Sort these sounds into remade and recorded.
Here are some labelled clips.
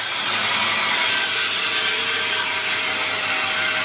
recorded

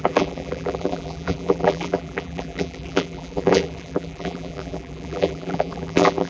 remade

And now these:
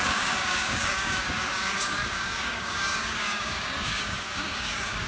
remade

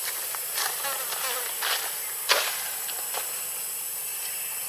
recorded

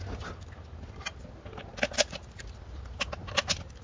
recorded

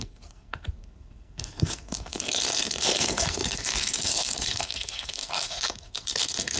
remade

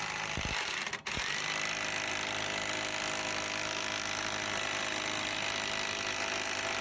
recorded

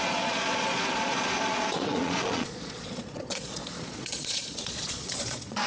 remade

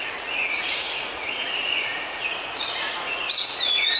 remade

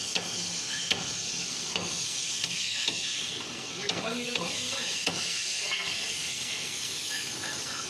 remade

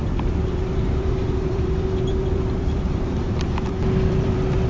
remade